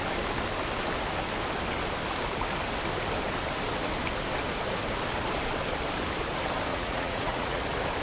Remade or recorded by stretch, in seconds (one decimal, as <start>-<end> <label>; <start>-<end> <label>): 0.0-6.7 recorded; 6.7-7.6 remade; 7.6-8.0 recorded